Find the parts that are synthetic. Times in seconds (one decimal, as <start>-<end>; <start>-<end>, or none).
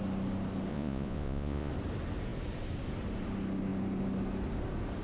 0.7-1.7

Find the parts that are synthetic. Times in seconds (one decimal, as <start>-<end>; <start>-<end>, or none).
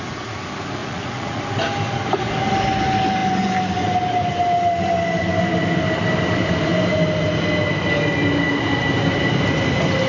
0.8-1.4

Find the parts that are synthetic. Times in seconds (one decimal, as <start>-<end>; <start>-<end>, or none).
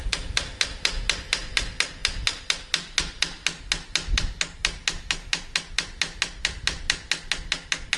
none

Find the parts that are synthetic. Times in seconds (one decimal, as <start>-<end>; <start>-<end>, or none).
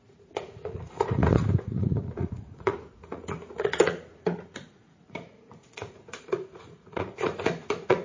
0.0-8.0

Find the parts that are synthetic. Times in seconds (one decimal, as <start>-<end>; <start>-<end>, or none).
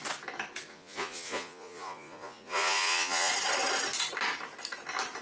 0.7-3.3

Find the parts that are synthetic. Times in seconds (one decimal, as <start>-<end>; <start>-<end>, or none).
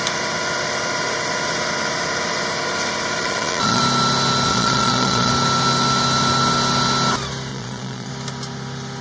3.2-3.8; 4.5-5.3; 7.5-8.1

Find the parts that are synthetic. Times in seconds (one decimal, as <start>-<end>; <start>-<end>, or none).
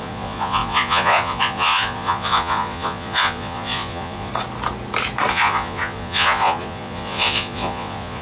0.0-4.3; 5.3-8.2